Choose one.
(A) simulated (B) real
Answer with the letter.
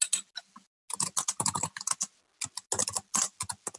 B